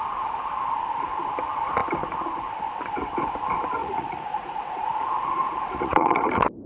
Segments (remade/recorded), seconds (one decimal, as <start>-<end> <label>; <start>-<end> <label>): 0.0-3.8 recorded; 3.8-6.2 remade; 6.2-6.7 recorded